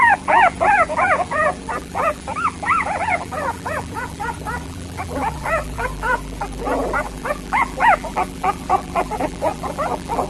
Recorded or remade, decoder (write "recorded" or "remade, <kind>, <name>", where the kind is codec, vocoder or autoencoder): remade, vocoder, BigVGAN v2